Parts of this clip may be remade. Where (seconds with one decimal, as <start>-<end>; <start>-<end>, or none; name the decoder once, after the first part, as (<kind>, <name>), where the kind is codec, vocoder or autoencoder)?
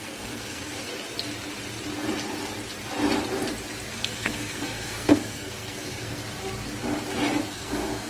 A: 0.0-0.9 (codec, SNAC); 3.9-6.2; 7.5-8.1